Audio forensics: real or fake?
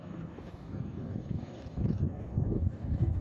fake